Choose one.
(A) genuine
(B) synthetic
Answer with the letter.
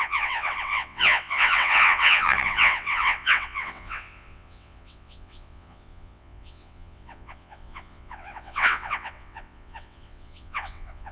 B